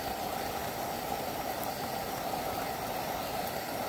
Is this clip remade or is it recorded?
recorded